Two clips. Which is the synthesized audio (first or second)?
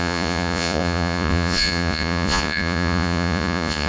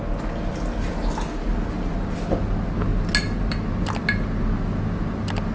first